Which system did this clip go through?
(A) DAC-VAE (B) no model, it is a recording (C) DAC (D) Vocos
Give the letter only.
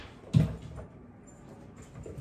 B